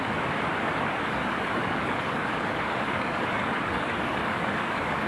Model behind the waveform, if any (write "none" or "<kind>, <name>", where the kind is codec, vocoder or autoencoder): codec, DAC